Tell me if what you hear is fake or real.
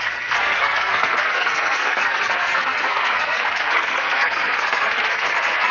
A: fake